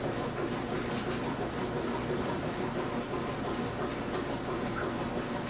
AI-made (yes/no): no